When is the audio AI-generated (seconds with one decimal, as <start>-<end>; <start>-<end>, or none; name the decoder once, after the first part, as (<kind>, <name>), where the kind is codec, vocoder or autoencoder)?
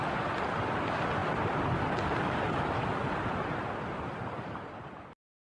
none